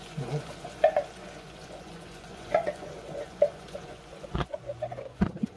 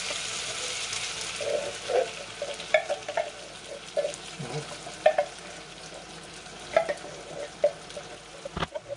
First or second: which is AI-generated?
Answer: first